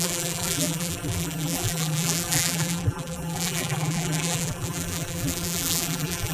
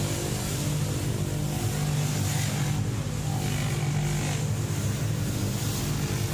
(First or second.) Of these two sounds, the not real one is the first